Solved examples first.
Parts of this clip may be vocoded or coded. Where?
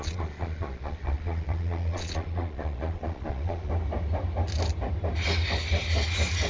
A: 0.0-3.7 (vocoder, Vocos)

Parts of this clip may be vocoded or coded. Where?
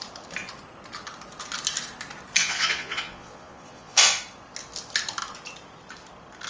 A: 2.4-4.2 (vocoder, Vocos)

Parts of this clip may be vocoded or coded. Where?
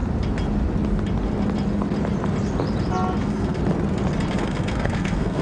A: 3.2-3.6 (codec, SNAC); 4.3-5.4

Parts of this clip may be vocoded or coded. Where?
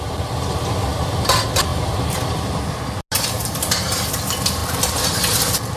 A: none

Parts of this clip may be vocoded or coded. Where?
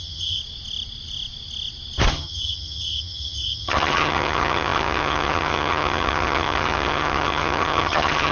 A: 0.0-0.4 (vocoder, HiFi-GAN); 2.1-8.3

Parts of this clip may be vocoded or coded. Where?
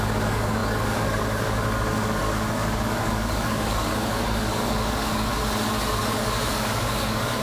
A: 0.0-5.3 (codec, DAC); 6.0-7.4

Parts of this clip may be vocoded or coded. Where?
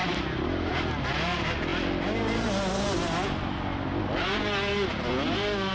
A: none